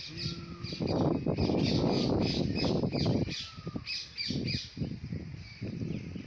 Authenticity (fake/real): real